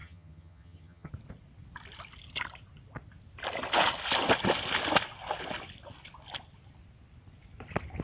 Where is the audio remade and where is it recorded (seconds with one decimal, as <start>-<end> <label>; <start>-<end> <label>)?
0.0-1.1 remade; 1.1-8.0 recorded